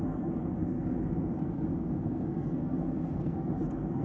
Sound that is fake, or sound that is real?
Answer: fake